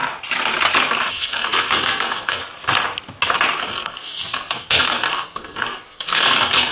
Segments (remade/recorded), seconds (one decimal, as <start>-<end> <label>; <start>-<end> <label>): 0.0-1.1 recorded; 1.1-2.4 remade; 2.4-3.6 recorded; 3.6-6.7 remade